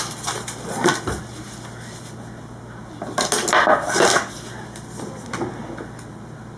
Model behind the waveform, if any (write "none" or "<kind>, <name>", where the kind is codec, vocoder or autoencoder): none